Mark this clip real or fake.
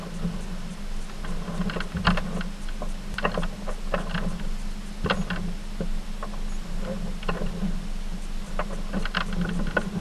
real